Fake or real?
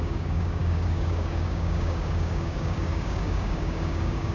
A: fake